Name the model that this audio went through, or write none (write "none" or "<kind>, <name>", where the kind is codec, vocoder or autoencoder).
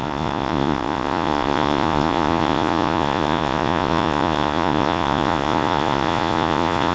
vocoder, Vocos